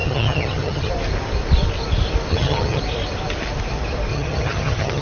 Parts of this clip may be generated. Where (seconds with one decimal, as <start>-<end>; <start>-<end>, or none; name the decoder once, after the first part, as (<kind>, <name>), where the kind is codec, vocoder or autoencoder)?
0.0-0.9 (vocoder, HiFi-GAN); 2.3-2.8; 4.1-5.0